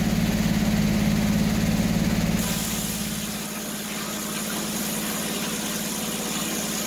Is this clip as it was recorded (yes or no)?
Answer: yes